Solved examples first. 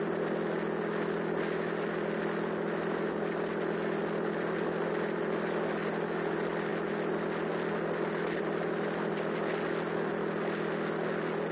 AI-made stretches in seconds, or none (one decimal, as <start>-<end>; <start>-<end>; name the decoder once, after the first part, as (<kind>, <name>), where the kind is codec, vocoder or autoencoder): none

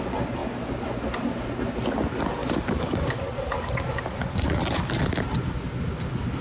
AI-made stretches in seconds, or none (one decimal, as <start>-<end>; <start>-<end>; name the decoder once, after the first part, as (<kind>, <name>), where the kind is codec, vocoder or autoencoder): 2.4-4.0 (codec, DAC)

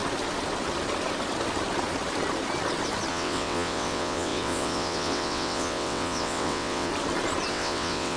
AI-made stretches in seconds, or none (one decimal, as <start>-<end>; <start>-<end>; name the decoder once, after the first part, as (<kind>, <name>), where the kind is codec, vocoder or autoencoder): 3.1-6.9 (vocoder, WaveNeXt); 7.5-8.2